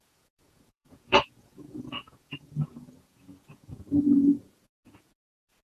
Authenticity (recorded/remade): remade